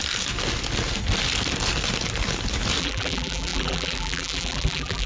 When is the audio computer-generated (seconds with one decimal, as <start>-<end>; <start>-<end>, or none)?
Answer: 2.8-5.1